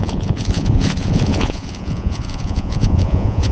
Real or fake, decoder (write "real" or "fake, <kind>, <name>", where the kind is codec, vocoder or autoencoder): fake, vocoder, Vocos